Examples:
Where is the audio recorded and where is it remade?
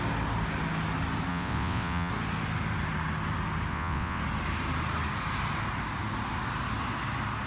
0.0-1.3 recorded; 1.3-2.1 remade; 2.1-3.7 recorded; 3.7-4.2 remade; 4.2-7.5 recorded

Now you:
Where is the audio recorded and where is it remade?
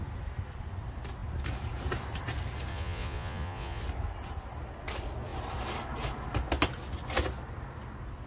0.0-2.7 recorded; 2.7-3.8 remade; 3.8-8.3 recorded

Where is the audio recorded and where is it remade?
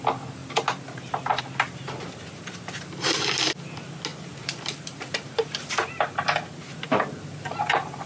0.0-0.4 recorded; 0.4-1.4 remade; 1.4-4.1 recorded; 4.1-5.5 remade; 5.5-8.1 recorded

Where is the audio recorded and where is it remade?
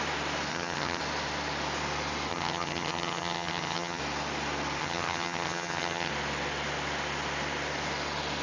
0.0-0.5 recorded; 0.5-1.0 remade; 1.0-2.3 recorded; 2.3-4.0 remade; 4.0-4.8 recorded; 4.8-6.1 remade; 6.1-8.4 recorded